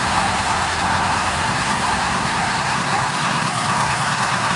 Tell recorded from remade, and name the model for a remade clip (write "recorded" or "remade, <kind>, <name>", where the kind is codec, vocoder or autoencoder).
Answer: remade, codec, SNAC